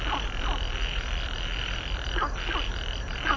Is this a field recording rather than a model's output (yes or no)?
yes